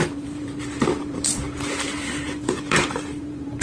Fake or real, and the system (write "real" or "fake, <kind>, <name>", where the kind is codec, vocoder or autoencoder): fake, vocoder, BigVGAN v2